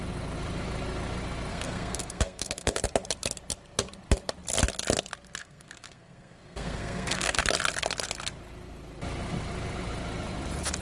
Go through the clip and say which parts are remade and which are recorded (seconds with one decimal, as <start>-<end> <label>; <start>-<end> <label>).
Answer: 0.0-1.5 recorded; 1.5-2.8 remade; 2.8-5.4 recorded; 5.4-7.4 remade; 7.4-10.8 recorded